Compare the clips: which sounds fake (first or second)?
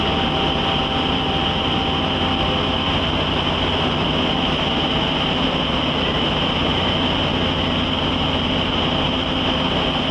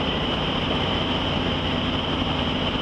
second